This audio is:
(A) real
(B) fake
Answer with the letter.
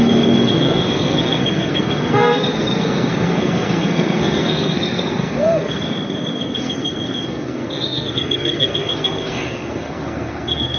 B